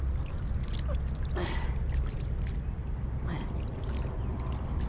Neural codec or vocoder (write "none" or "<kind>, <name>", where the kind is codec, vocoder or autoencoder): none